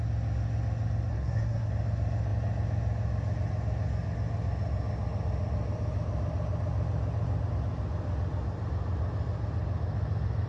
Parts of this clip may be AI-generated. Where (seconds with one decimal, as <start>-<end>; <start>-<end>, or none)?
1.1-1.7

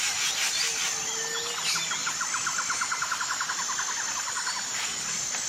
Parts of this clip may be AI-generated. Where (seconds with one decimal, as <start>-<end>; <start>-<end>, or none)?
none

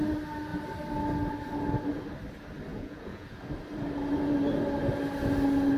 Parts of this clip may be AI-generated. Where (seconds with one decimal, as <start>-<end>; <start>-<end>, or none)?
2.7-3.4

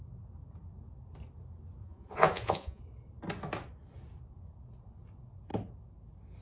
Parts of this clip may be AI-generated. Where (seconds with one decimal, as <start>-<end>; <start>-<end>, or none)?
1.8-2.8

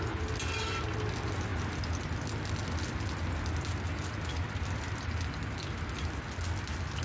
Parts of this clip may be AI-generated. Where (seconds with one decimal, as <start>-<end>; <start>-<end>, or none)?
none

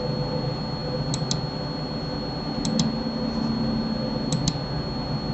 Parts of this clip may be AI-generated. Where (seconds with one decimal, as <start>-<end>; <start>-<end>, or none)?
none

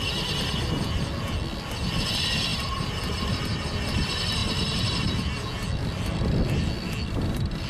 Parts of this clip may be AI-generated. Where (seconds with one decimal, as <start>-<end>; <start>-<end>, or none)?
2.5-3.4; 4.4-5.2